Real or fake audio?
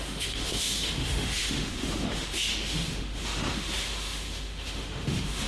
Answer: fake